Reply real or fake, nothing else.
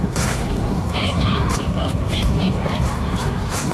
fake